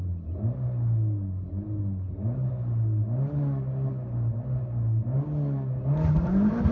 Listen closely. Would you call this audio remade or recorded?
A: recorded